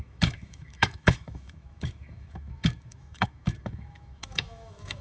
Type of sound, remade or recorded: remade